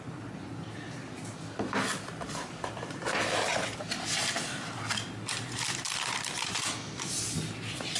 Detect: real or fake real